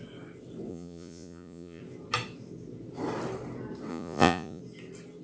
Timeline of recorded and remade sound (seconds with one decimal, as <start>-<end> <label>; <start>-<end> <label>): 0.0-0.7 recorded; 0.7-1.8 remade; 1.8-3.9 recorded; 3.9-4.6 remade; 4.6-5.2 recorded